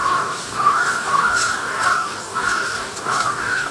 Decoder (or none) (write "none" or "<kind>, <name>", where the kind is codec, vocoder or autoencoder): codec, DAC